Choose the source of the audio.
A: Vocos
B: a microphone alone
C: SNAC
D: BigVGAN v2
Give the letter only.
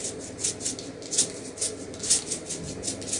B